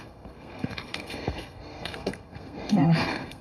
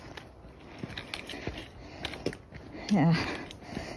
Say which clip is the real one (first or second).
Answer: second